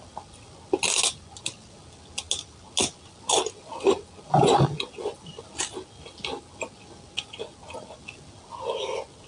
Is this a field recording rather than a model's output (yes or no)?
yes